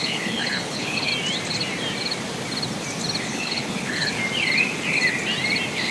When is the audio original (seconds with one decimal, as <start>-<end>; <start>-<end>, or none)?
1.1-3.2; 4.2-5.9